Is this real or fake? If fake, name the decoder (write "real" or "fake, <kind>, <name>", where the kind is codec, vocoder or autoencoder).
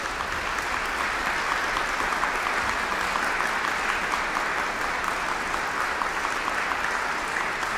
real